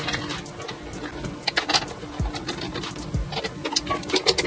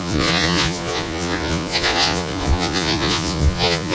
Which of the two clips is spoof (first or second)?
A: second